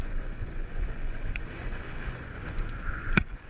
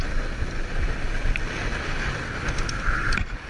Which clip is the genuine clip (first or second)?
second